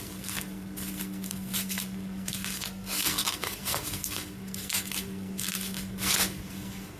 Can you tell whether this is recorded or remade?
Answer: remade